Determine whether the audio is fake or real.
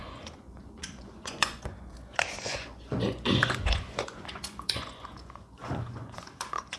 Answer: fake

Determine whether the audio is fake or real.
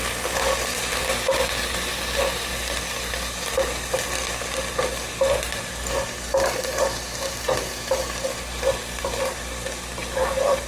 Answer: fake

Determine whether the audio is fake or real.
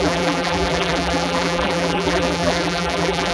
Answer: fake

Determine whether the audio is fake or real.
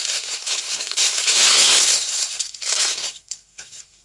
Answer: fake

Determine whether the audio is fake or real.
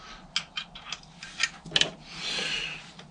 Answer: real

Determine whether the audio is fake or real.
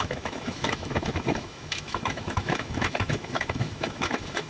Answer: fake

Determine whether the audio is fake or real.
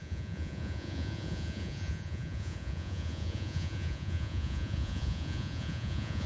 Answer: fake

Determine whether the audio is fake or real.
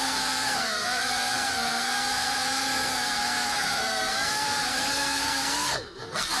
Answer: fake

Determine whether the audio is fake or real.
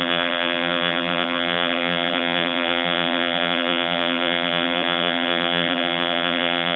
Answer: fake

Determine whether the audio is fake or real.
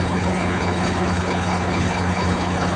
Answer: fake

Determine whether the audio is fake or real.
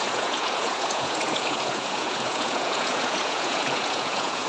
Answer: fake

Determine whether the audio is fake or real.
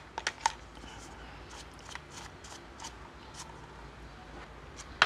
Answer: real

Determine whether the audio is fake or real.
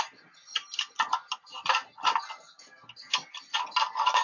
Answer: fake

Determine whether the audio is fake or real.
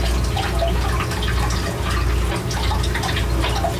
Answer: real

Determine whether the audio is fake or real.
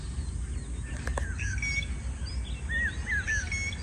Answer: real